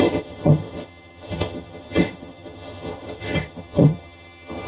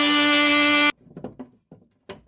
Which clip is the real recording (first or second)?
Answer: second